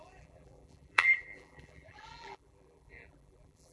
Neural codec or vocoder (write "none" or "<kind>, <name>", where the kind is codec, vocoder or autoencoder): vocoder, BigVGAN v2